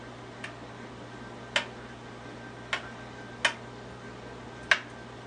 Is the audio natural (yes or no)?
yes